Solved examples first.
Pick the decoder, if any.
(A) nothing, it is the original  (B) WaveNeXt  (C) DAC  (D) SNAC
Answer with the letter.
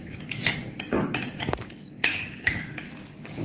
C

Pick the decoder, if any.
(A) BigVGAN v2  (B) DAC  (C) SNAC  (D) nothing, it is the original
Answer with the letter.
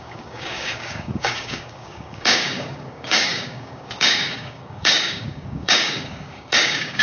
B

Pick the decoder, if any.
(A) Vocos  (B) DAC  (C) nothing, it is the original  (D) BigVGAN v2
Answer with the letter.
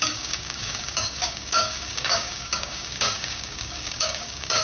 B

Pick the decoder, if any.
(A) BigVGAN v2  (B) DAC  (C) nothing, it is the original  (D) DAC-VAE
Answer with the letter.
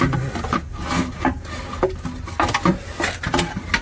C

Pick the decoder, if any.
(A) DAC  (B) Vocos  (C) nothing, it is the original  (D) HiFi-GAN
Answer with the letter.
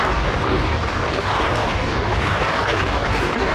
A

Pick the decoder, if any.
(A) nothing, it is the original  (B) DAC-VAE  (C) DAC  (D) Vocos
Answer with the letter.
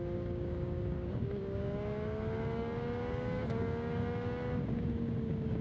C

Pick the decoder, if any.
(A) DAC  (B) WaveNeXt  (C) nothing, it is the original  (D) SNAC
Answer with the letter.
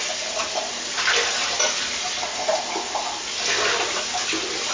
C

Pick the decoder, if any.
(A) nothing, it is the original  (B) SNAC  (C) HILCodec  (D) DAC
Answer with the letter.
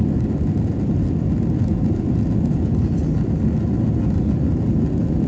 A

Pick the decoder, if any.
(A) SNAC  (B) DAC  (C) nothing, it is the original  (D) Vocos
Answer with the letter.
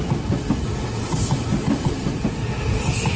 C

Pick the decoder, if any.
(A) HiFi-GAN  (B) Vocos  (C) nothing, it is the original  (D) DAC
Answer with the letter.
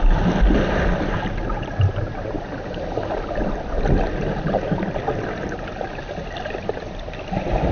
C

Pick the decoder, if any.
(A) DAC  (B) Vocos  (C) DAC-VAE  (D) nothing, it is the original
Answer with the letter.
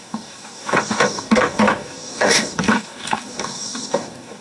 A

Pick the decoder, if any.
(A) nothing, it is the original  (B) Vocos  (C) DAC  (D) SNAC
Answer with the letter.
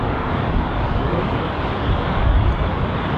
C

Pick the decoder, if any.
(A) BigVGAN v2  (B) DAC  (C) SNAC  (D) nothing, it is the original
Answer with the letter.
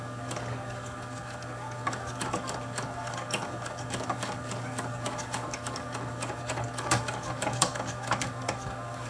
B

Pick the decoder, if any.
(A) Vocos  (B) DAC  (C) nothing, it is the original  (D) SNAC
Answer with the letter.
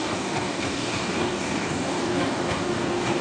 B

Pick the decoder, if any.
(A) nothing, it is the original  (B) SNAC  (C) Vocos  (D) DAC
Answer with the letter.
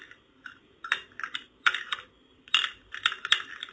A